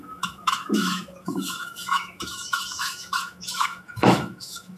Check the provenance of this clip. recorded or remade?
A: remade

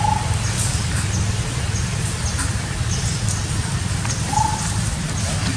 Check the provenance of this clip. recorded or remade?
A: recorded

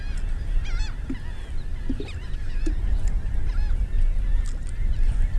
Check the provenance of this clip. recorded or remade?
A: recorded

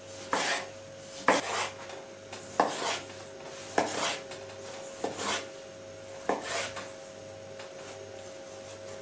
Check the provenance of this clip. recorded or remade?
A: recorded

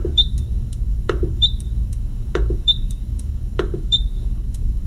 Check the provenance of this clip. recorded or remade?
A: remade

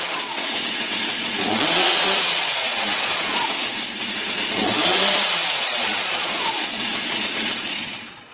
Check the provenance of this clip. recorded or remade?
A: remade